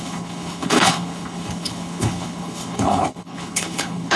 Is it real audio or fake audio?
fake